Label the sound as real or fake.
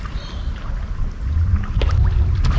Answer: real